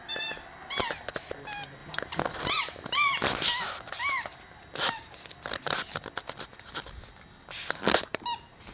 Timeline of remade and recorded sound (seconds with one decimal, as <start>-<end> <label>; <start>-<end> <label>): 0.0-8.7 recorded